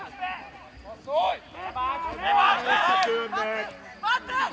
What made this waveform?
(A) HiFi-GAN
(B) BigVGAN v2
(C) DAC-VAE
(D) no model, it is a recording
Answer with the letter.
D